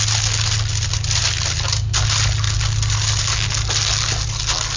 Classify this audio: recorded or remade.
recorded